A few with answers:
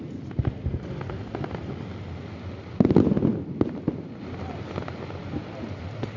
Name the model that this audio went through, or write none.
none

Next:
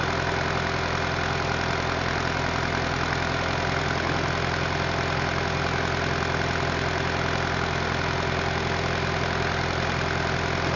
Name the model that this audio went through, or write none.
none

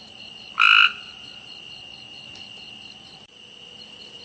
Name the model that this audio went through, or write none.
vocoder, BigVGAN v2